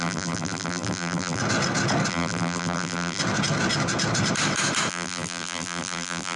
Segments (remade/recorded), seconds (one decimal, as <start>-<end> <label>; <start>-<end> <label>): 0.0-1.4 remade; 1.4-2.1 recorded; 2.1-3.2 remade; 3.2-4.9 recorded; 4.9-6.4 remade